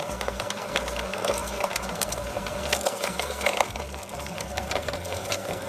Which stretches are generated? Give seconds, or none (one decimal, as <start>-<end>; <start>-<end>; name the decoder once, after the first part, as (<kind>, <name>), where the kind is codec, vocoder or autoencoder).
0.0-5.7 (codec, SNAC)

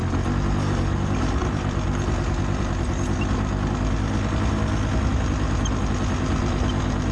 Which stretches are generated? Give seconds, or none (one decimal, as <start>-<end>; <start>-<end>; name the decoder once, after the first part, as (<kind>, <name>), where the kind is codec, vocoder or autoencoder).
none